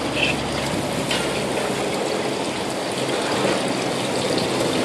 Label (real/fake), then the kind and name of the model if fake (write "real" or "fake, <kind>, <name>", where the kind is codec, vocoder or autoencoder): real